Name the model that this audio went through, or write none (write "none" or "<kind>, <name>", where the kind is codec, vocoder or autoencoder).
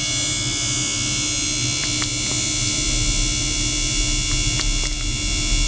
none